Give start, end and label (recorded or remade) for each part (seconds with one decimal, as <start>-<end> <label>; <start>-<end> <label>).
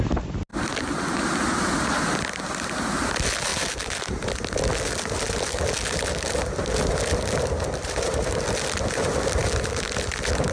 0.0-10.5 recorded